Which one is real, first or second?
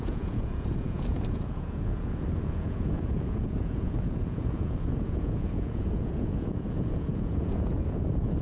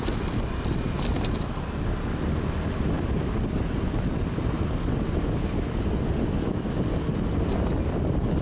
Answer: second